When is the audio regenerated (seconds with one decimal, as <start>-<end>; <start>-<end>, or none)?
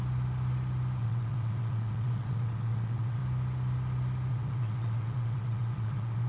1.0-3.2; 4.3-6.3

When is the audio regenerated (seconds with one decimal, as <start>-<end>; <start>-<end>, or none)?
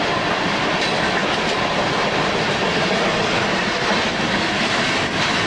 none